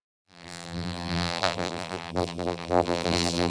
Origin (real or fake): fake